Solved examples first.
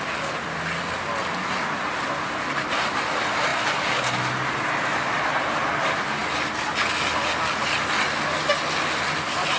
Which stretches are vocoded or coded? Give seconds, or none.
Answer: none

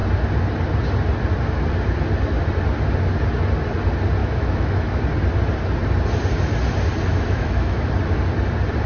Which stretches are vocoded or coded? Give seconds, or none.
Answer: 4.2-5.0 (autoencoder, DAC-VAE); 7.1-7.9

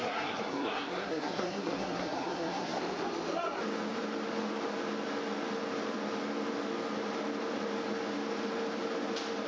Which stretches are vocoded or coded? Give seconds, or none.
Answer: 0.0-2.8 (codec, SNAC)

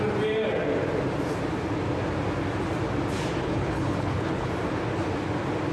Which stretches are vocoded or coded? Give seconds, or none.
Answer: 3.4-4.5 (codec, HILCodec)

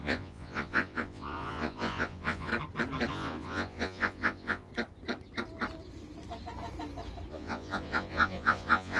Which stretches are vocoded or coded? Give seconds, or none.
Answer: 0.0-2.5 (vocoder, Vocos); 3.1-4.7; 7.3-9.0

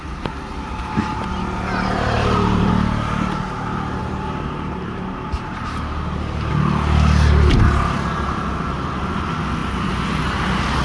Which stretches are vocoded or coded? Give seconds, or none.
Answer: 0.7-2.7 (vocoder, BigVGAN v2); 4.0-6.5; 9.6-10.8

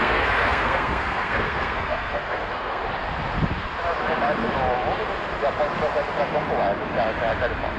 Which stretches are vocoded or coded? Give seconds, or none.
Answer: 0.0-2.8 (codec, SNAC)